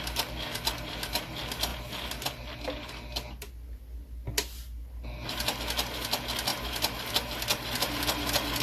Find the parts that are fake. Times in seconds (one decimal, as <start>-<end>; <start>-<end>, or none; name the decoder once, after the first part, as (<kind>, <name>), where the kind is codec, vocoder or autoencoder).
none